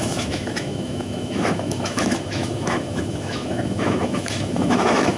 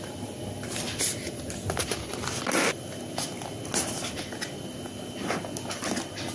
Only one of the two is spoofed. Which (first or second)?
first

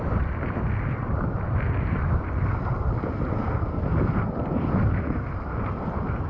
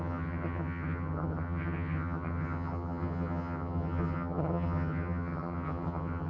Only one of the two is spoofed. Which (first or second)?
second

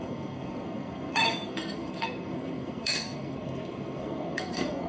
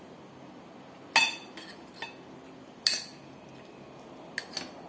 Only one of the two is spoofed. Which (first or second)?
first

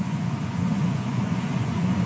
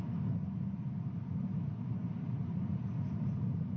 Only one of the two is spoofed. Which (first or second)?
first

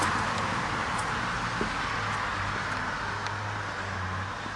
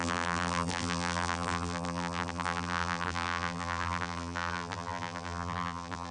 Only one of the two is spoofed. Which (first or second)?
second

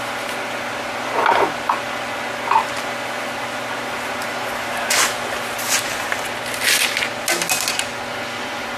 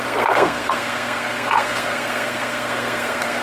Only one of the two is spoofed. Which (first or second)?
second